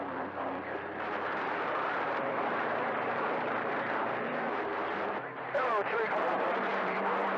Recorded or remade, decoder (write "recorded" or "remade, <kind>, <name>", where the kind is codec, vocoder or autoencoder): remade, vocoder, BigVGAN v2